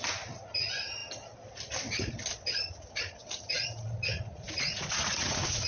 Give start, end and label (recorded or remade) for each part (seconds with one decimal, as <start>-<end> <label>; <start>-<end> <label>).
0.0-4.1 recorded; 4.1-5.7 remade